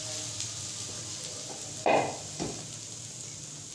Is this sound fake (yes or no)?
no